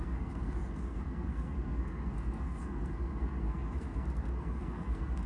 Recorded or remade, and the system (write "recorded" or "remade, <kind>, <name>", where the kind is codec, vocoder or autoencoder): remade, codec, SNAC